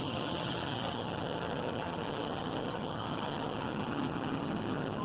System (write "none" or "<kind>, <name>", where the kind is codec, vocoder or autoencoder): vocoder, HiFi-GAN